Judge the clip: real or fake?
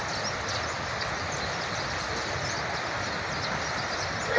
real